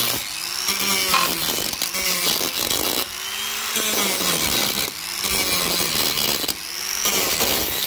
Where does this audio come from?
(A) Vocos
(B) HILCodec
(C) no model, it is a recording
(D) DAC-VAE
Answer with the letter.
C